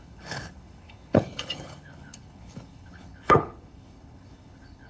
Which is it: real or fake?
fake